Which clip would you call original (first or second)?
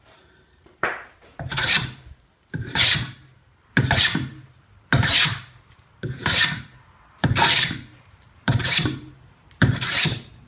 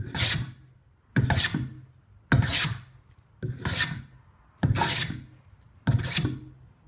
second